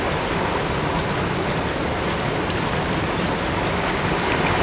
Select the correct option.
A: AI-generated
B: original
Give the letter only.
B